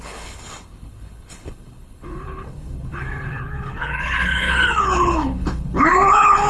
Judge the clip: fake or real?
fake